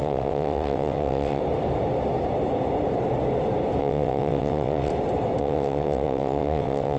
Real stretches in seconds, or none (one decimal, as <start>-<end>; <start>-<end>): 1.4-3.8; 4.9-5.4